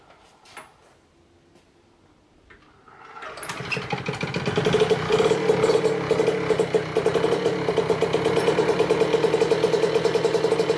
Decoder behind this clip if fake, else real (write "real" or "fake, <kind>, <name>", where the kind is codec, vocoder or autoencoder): real